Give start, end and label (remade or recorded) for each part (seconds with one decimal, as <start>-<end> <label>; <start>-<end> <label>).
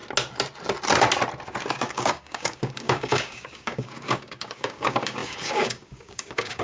0.0-1.7 recorded; 1.7-6.6 remade